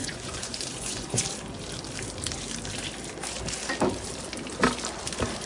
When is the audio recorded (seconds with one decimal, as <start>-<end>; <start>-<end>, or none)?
1.2-5.5